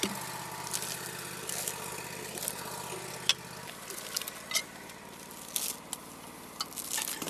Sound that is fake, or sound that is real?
real